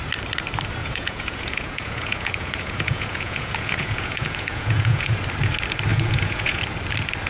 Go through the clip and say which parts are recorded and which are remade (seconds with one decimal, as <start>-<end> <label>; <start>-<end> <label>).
0.0-0.8 recorded; 0.8-5.2 remade; 5.2-5.9 recorded; 5.9-6.6 remade; 6.6-7.3 recorded